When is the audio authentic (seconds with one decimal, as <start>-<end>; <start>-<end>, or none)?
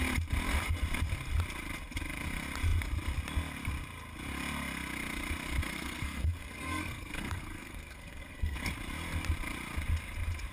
0.0-5.7; 8.7-10.5